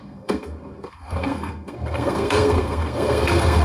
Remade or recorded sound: remade